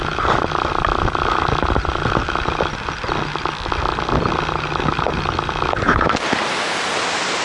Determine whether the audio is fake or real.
real